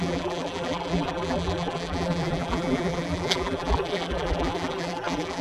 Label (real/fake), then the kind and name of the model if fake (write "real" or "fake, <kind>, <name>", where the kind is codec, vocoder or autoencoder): fake, vocoder, BigVGAN v2